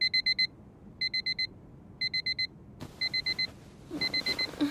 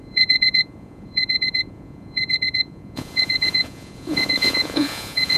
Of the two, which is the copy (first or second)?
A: second